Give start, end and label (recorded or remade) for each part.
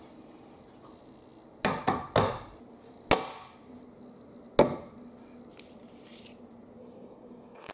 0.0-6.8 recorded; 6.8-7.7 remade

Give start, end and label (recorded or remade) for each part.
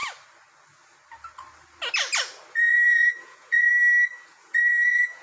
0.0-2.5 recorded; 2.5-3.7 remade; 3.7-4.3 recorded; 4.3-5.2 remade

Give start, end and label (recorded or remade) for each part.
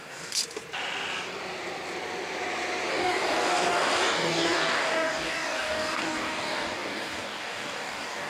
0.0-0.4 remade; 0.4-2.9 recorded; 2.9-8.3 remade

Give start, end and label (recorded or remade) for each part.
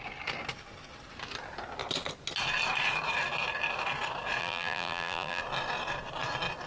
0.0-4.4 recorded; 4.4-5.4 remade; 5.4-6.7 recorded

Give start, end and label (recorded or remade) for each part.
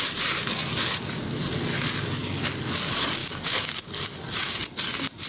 0.0-3.2 recorded; 3.2-3.9 remade; 3.9-5.3 recorded